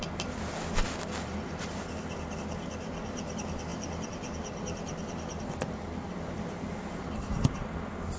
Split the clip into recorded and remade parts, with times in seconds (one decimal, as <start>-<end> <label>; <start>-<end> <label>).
0.0-8.2 recorded